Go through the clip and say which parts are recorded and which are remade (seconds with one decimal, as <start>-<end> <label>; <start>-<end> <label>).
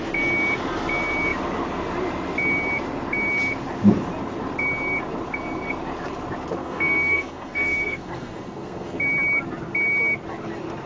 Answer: 0.0-6.6 recorded; 6.6-9.0 remade; 9.0-10.9 recorded